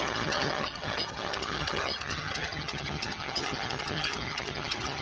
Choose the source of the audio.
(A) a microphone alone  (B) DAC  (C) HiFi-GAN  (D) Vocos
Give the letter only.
C